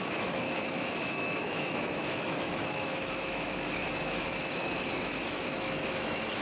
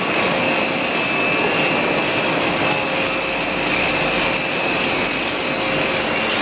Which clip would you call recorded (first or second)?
second